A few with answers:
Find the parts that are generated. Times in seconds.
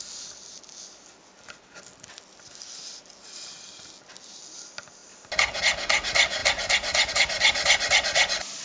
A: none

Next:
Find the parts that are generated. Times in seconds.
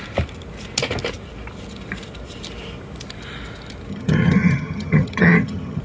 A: 3.9-5.8 (vocoder, HiFi-GAN)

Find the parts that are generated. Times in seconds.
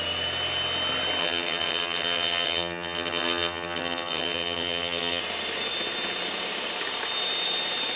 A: 1.2-5.2 (vocoder, HiFi-GAN)